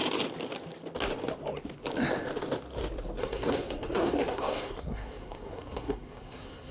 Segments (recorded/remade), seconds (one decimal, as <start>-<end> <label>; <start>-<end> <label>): 0.0-3.2 recorded; 3.2-6.7 remade